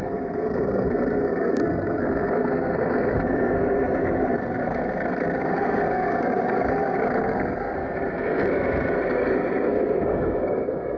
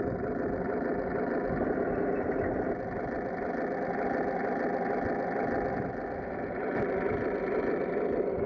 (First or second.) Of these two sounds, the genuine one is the second